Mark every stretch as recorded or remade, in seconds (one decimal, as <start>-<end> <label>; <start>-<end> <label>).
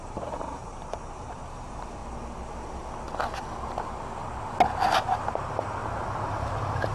0.0-2.0 remade; 2.0-5.3 recorded; 5.3-5.8 remade; 5.8-6.3 recorded; 6.3-6.9 remade